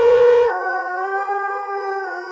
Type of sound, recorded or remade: remade